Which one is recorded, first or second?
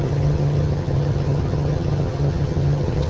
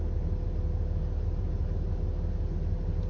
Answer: second